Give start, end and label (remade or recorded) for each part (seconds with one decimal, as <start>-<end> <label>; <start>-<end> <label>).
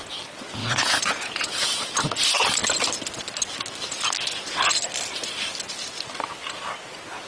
0.0-0.6 recorded; 0.6-1.9 remade; 1.9-7.3 recorded